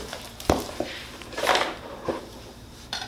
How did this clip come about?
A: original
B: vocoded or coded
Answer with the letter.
B